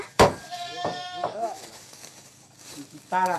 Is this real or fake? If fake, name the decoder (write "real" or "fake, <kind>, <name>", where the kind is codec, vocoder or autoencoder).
fake, codec, DAC